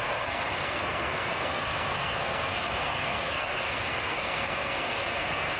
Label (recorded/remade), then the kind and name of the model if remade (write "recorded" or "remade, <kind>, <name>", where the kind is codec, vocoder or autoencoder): remade, codec, SNAC